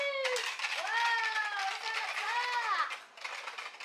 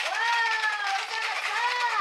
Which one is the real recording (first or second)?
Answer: first